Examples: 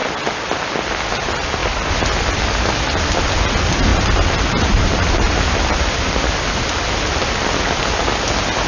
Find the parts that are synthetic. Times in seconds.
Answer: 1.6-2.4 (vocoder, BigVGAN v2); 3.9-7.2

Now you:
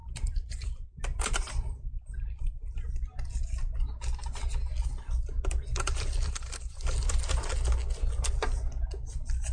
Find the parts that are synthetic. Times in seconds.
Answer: 0.0-2.9 (vocoder, BigVGAN v2); 5.7-7.5

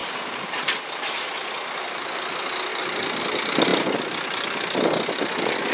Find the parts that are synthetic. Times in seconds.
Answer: 0.0-1.1 (vocoder, BigVGAN v2); 2.7-3.2

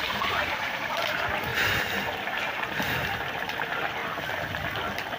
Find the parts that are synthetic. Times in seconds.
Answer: 0.0-1.5 (vocoder, BigVGAN v2); 2.0-4.0

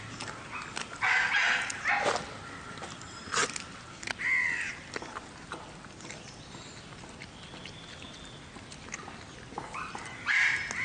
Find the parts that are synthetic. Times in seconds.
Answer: none